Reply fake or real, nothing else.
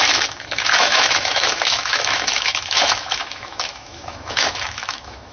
fake